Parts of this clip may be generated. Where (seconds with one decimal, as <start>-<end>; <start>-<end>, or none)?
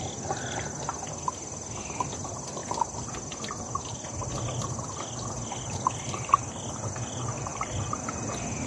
none